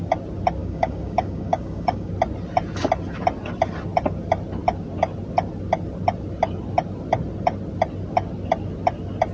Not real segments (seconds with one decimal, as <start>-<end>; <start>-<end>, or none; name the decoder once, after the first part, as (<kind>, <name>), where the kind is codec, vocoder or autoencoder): 0.6-2.1 (codec, DAC)